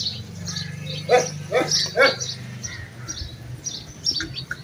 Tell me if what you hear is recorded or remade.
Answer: recorded